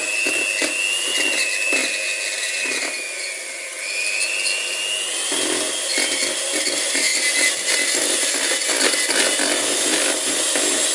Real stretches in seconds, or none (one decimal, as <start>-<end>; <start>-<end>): 0.0-10.9